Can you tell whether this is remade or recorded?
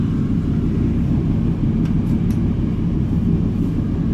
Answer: recorded